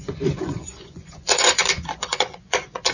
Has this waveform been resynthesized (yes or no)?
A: yes